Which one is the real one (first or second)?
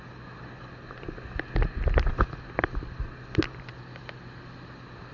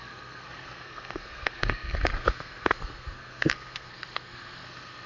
first